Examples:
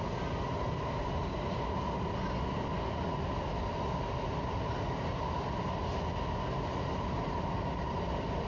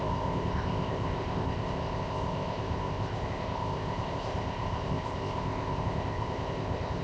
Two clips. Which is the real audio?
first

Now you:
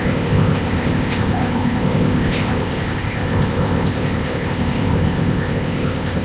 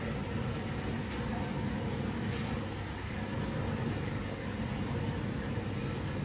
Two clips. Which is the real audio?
second